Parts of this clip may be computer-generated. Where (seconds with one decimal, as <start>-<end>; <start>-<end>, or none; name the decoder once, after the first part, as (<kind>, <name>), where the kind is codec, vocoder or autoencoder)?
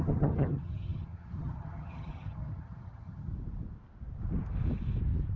0.0-3.3 (vocoder, HiFi-GAN)